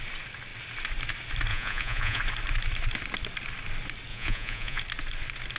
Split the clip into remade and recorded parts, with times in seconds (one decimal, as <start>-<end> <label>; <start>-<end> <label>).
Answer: 0.0-1.5 recorded; 1.5-2.2 remade; 2.2-4.1 recorded; 4.1-4.8 remade; 4.8-5.6 recorded